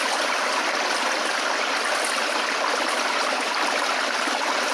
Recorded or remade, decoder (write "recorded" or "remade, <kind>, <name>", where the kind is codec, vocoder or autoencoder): recorded